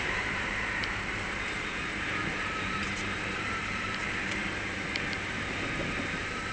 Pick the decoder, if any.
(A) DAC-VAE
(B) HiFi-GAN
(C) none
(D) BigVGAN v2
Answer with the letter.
D